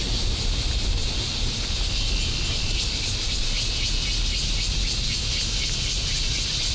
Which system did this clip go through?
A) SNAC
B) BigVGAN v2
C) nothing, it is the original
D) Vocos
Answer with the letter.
C